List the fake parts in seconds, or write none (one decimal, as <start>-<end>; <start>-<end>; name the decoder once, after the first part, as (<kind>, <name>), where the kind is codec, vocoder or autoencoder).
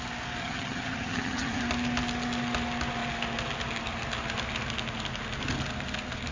0.4-1.6 (vocoder, HiFi-GAN)